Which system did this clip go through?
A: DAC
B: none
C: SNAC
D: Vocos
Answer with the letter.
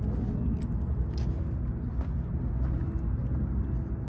B